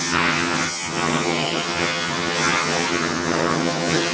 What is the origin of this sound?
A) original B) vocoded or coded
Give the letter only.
B